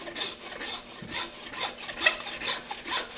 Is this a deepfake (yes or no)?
no